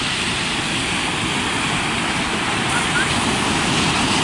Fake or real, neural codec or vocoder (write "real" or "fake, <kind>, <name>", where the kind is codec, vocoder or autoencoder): real